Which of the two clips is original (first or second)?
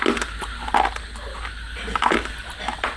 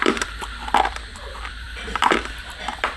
first